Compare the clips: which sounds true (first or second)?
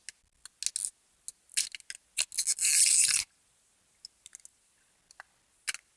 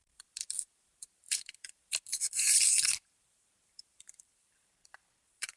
first